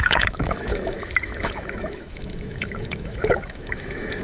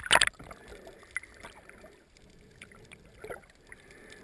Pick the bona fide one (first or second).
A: second